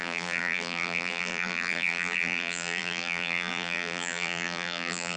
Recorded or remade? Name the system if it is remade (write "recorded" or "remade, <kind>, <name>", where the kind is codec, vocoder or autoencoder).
remade, vocoder, BigVGAN v2